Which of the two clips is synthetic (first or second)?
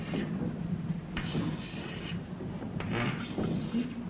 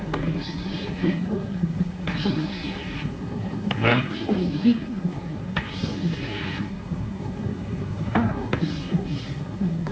second